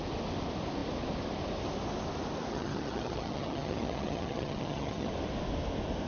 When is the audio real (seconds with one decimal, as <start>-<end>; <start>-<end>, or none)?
0.0-2.5; 5.1-6.1